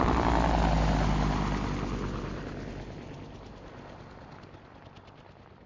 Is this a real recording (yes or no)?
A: yes